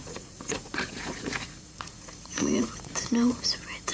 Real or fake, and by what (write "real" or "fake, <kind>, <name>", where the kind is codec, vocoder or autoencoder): fake, vocoder, Vocos